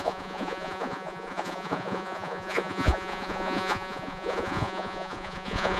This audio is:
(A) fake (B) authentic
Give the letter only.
A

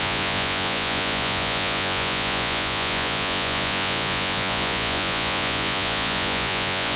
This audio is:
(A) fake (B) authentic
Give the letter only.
A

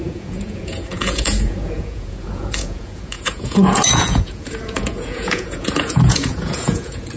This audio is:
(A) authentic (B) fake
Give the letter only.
B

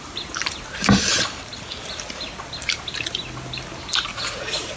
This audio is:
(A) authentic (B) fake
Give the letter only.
A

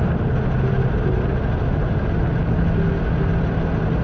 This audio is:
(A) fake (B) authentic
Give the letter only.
B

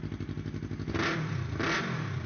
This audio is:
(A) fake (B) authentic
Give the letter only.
B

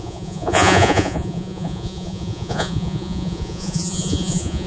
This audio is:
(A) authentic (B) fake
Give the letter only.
B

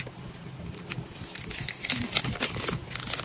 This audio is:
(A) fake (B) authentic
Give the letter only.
B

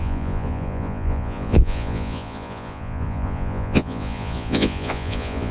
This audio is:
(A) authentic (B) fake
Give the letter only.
B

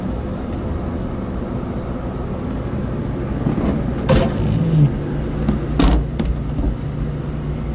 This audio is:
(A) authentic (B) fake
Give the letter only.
A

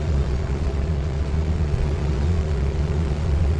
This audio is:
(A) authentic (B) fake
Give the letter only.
B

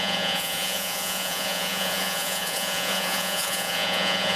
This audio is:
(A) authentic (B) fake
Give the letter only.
B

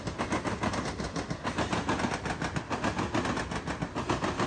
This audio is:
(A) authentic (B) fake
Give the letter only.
A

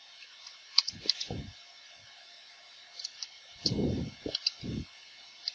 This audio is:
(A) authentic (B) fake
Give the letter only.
A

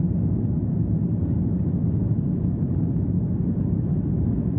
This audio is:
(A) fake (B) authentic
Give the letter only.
B